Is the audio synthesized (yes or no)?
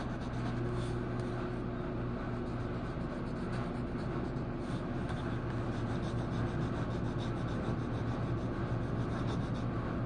no